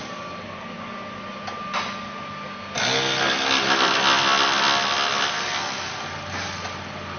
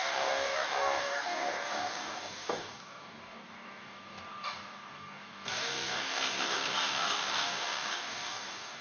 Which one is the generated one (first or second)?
second